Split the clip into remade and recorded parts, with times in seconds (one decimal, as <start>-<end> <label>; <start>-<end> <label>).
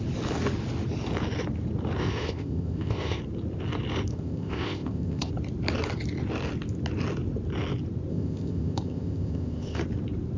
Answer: 0.0-2.0 recorded; 2.0-3.2 remade; 3.2-4.1 recorded; 4.1-5.3 remade; 5.3-8.1 recorded; 8.1-9.8 remade; 9.8-10.4 recorded